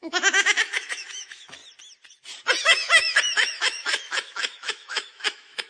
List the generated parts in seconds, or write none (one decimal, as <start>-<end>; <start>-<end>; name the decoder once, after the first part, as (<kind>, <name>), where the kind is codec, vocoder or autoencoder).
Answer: 0.0-1.6 (autoencoder, DAC-VAE); 2.6-5.7